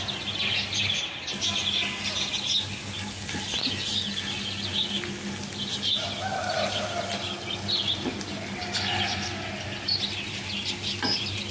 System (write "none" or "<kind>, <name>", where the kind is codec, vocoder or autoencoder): none